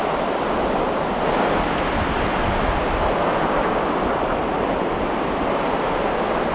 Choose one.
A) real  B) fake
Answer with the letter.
A